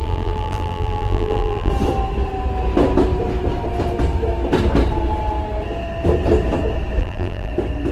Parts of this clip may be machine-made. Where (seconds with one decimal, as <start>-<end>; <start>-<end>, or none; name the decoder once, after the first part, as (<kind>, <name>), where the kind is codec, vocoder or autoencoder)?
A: 0.0-1.7 (vocoder, BigVGAN v2); 7.0-7.5